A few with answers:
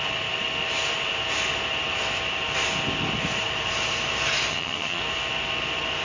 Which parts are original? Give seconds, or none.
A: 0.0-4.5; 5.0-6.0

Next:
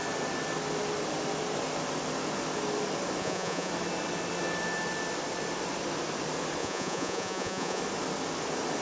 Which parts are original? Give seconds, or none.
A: 0.0-3.2; 3.7-6.6; 7.8-8.8

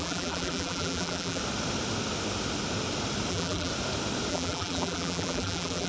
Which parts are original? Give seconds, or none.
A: 1.4-3.3; 3.7-4.3

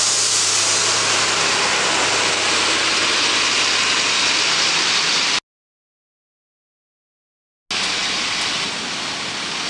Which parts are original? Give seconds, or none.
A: 0.0-9.7

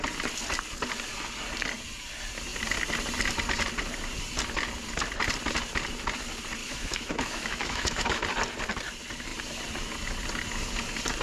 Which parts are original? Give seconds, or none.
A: 0.0-6.6; 8.2-11.2